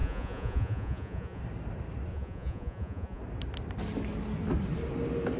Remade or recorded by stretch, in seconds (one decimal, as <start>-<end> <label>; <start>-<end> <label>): 0.0-1.4 remade; 1.4-2.1 recorded; 2.1-3.2 remade; 3.2-5.4 recorded